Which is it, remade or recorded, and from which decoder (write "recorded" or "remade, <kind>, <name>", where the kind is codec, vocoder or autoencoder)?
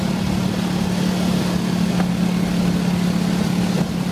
recorded